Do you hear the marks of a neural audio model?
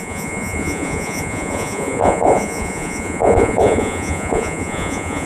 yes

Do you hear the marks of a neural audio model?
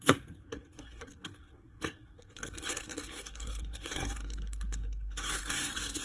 yes